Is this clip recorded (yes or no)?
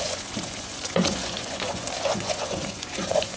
no